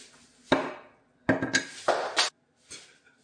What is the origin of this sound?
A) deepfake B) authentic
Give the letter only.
B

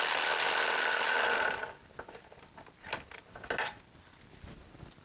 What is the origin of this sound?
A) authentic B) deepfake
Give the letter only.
A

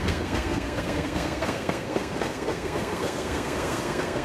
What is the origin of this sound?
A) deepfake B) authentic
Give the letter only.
A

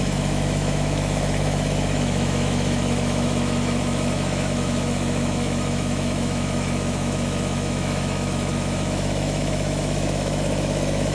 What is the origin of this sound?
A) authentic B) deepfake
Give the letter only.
B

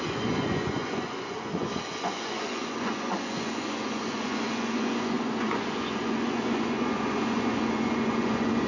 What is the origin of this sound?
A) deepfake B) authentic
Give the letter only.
A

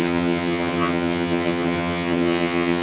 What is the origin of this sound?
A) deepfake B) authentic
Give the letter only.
A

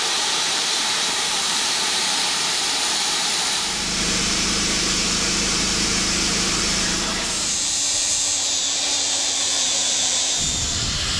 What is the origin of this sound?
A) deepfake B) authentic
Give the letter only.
A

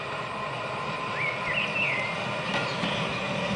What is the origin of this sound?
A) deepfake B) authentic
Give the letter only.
B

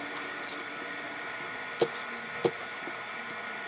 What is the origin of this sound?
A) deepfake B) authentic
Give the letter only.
B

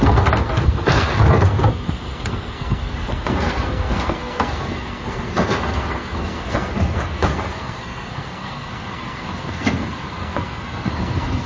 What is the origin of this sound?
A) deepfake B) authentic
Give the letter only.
A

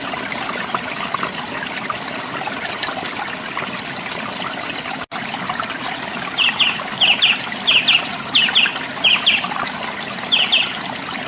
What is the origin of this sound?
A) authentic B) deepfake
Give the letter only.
A